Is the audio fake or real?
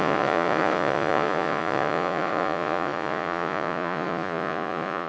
fake